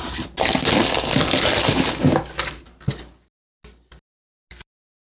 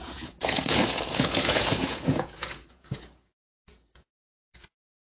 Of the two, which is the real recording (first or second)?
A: first